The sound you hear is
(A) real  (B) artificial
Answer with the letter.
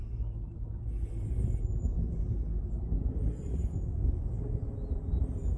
A